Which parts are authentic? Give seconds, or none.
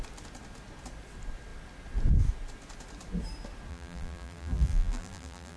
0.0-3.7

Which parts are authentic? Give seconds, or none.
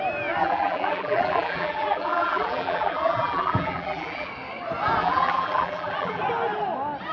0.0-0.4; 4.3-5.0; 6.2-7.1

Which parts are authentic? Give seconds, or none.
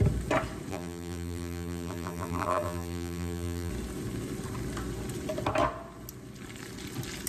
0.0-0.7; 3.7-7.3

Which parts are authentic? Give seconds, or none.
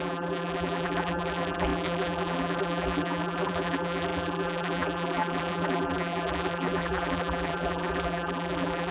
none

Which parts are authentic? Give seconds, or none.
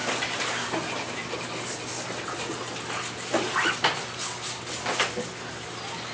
0.0-6.1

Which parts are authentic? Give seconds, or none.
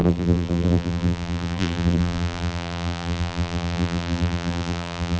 none